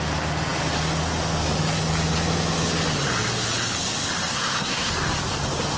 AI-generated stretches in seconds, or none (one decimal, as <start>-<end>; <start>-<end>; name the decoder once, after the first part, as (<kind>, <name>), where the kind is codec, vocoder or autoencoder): 4.3-4.9 (codec, SNAC)